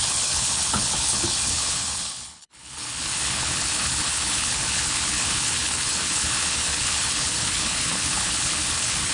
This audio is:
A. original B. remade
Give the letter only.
B